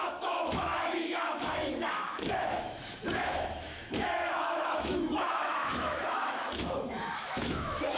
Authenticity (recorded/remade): remade